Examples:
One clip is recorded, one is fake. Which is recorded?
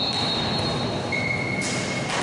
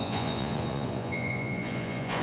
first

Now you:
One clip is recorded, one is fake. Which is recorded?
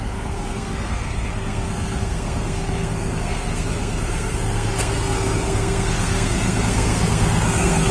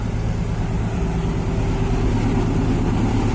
second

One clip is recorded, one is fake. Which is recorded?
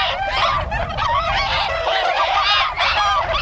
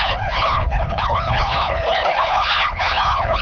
first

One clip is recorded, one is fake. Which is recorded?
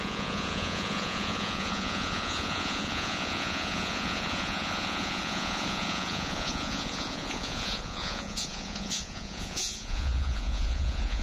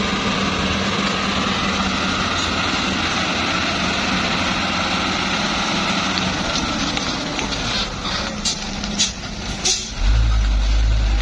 second